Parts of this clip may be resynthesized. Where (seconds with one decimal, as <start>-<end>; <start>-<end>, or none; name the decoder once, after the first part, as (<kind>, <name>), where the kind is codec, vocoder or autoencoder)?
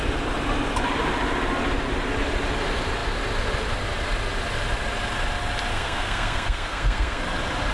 5.7-7.2 (codec, SNAC)